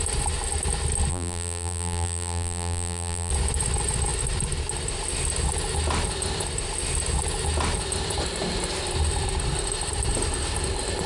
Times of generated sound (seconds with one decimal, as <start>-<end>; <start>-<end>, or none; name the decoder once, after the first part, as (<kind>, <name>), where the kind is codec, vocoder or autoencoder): 1.1-3.3 (vocoder, BigVGAN v2)